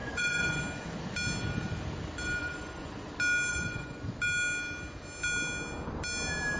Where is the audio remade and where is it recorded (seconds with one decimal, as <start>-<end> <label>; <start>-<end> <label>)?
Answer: 0.0-0.6 remade; 0.6-2.4 recorded; 2.4-3.1 remade; 3.1-3.5 recorded; 3.5-4.1 remade; 4.1-6.6 recorded